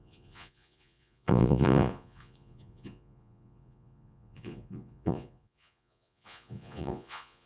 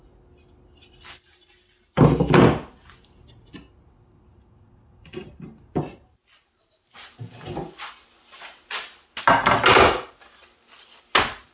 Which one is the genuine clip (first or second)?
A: second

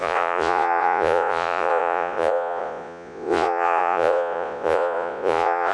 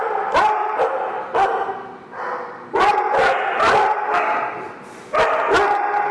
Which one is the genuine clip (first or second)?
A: second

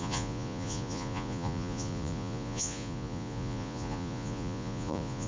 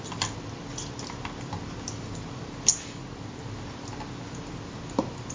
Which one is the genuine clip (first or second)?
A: second